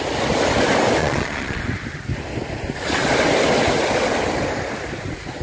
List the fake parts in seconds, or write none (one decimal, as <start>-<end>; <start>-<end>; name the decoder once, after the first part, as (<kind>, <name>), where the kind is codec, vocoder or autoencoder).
1.0-1.6 (vocoder, Vocos)